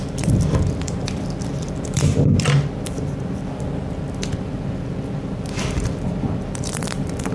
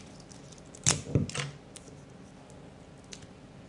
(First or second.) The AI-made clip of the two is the first